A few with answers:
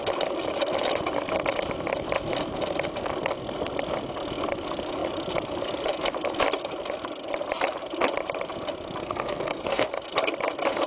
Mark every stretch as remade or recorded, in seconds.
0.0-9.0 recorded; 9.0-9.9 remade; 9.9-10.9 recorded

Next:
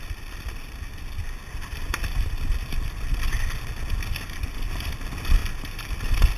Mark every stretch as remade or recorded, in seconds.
0.0-6.4 recorded

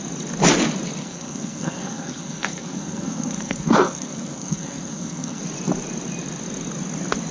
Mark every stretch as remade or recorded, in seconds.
0.0-1.0 recorded; 1.0-5.4 remade; 5.4-7.3 recorded

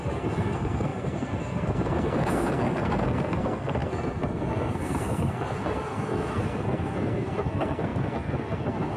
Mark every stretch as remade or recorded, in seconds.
0.0-9.0 remade

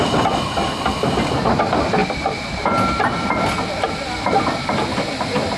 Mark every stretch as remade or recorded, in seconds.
0.0-5.6 recorded

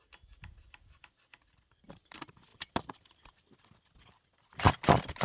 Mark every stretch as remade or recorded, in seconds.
0.0-5.2 recorded

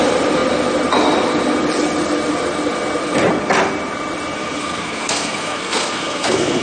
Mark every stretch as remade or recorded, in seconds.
0.0-4.6 recorded; 4.6-6.6 remade

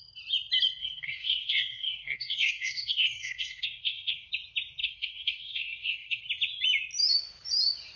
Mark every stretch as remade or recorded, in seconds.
0.0-0.8 recorded; 0.8-4.3 remade; 4.3-4.8 recorded; 4.8-6.2 remade; 6.2-8.0 recorded